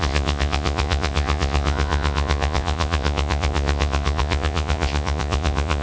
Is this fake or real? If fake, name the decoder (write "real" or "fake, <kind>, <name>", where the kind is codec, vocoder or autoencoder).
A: fake, vocoder, Vocos